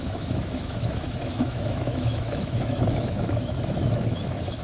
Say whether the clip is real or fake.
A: fake